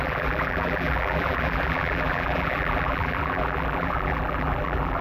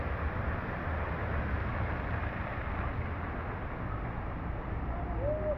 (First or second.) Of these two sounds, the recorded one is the second